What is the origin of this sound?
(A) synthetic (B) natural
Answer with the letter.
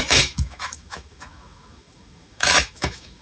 A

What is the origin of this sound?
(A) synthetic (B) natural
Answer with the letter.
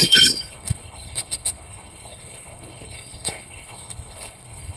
A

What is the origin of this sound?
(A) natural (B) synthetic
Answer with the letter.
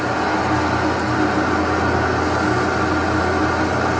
A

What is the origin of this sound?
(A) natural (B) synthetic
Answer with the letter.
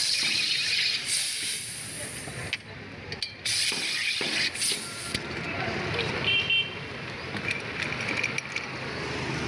A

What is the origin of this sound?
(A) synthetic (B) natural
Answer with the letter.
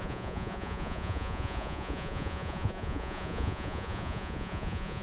A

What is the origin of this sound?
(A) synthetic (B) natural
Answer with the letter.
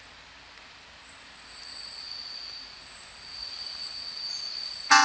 B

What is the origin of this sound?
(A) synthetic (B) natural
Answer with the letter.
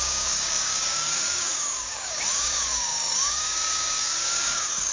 A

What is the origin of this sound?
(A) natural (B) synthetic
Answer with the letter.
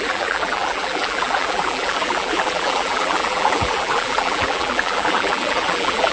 B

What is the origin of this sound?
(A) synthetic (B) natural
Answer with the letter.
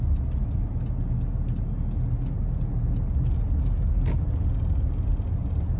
B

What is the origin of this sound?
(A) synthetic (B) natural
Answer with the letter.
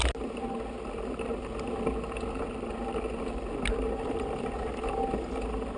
B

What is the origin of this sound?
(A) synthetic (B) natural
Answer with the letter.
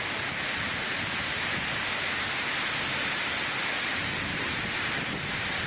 B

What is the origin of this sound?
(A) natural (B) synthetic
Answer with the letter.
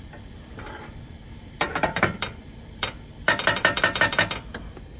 B